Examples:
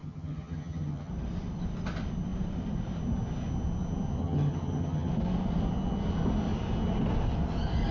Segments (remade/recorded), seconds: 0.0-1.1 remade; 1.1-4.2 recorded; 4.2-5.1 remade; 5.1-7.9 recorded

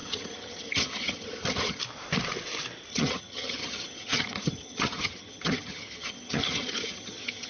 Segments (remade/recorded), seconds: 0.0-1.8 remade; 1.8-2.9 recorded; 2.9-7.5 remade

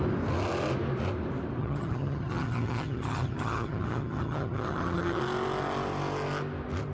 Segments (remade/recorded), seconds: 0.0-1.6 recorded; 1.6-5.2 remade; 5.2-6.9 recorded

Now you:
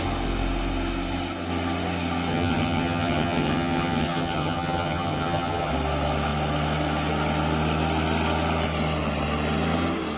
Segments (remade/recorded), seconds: 0.0-2.3 recorded; 2.3-5.7 remade; 5.7-10.2 recorded

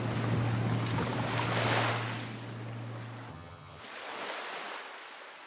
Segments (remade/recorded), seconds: 0.0-3.3 recorded; 3.3-3.8 remade; 3.8-5.5 recorded